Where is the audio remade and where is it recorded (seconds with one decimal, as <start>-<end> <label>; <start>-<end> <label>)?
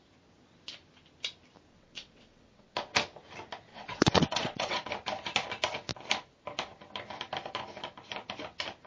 0.0-1.7 recorded; 1.7-2.9 remade; 2.9-3.7 recorded; 3.7-4.9 remade; 4.9-8.9 recorded